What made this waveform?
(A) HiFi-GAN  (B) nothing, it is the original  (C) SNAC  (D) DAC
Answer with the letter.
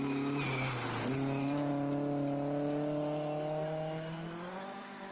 B